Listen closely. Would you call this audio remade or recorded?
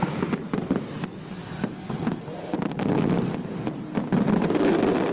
recorded